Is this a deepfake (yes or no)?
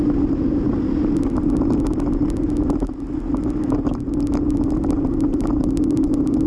no